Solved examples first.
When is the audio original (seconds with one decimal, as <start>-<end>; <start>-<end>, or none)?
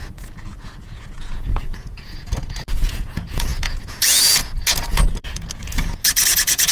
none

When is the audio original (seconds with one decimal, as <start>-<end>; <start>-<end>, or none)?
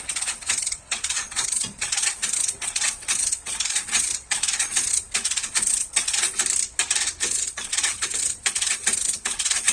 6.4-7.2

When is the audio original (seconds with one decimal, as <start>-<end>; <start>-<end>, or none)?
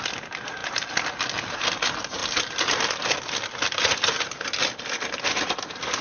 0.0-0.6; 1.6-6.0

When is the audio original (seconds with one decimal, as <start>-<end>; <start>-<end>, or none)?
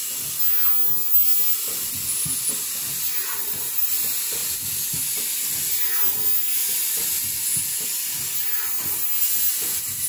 0.0-3.4; 3.9-10.1